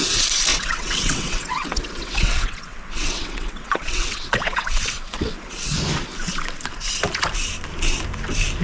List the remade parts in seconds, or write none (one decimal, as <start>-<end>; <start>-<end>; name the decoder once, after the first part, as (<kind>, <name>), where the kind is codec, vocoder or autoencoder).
0.5-5.7 (vocoder, WaveNeXt)